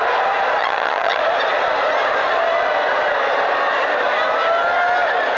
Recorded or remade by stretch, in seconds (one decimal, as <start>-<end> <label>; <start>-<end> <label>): 0.0-0.6 recorded; 0.6-1.2 remade; 1.2-5.4 recorded